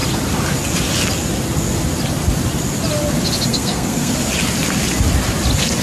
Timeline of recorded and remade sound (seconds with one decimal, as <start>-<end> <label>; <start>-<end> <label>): 0.0-3.5 recorded; 3.5-4.1 remade; 4.1-5.8 recorded